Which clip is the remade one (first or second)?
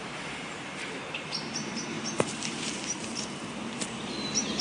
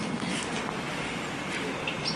first